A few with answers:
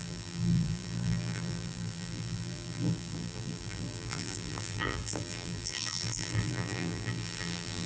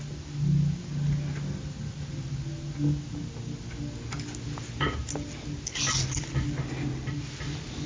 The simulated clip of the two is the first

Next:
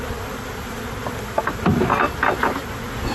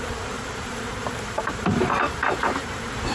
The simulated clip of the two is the second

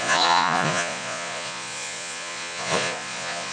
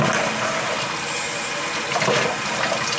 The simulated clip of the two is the first